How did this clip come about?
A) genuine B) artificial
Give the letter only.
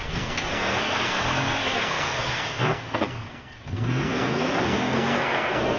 B